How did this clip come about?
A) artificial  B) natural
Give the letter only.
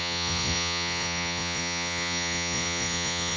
A